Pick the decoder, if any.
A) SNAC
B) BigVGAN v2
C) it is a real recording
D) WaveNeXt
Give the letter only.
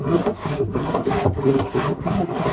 A